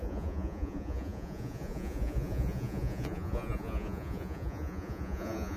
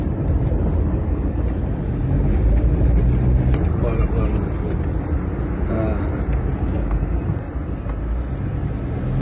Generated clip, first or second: first